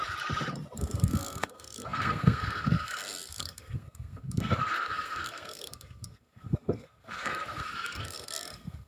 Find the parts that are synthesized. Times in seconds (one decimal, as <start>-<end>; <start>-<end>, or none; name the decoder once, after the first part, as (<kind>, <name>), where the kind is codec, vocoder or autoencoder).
0.8-8.9 (codec, SNAC)